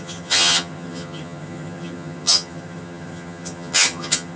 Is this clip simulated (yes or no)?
yes